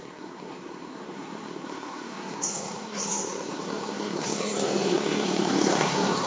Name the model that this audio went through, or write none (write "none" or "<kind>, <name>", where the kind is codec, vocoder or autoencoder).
codec, SNAC